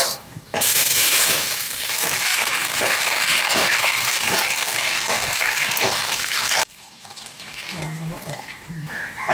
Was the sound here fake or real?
fake